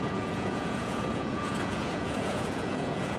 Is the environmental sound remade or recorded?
remade